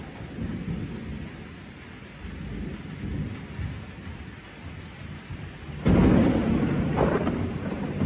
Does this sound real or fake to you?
real